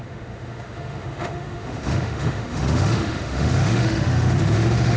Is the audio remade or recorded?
remade